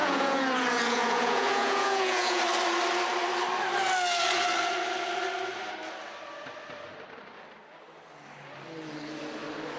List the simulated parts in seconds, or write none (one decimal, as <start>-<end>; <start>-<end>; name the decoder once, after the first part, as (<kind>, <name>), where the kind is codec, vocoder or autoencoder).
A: 0.0-2.4 (vocoder, Vocos)